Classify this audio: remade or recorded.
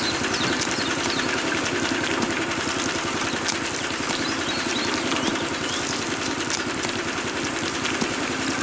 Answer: remade